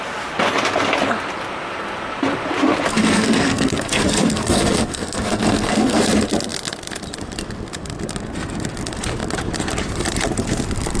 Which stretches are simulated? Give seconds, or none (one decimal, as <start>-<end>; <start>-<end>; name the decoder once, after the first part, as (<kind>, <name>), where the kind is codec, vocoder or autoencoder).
3.0-6.0 (codec, SNAC)